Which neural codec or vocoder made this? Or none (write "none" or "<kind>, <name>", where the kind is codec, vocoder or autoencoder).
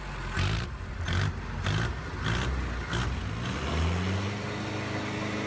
none